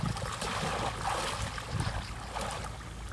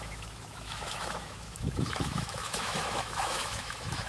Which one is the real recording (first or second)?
first